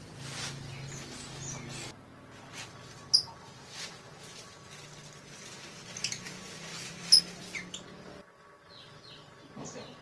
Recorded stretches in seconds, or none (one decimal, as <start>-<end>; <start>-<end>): 0.0-10.0